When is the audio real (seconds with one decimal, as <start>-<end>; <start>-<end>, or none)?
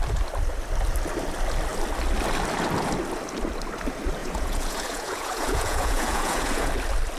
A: 0.0-4.2; 6.7-7.2